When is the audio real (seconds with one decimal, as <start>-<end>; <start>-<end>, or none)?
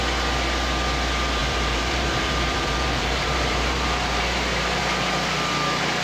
0.0-1.4; 4.8-6.0